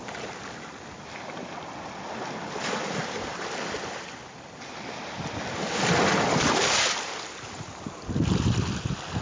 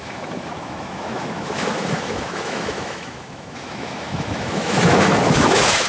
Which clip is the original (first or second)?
first